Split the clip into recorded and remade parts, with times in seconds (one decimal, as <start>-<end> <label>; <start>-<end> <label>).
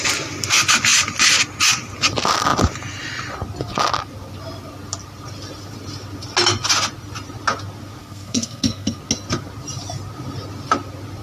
0.0-8.0 recorded; 8.0-9.0 remade; 9.0-11.2 recorded